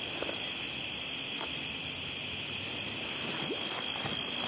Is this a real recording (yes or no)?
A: no